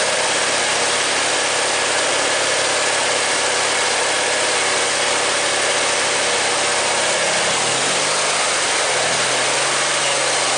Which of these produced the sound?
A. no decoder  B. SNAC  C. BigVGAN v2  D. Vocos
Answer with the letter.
A